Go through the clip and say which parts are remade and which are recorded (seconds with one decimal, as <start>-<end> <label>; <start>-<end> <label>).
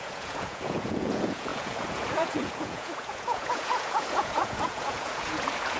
0.0-5.8 remade